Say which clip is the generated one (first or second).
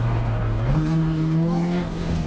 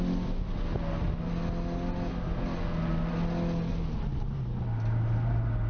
first